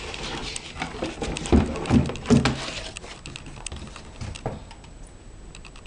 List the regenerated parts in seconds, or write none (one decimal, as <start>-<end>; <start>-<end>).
none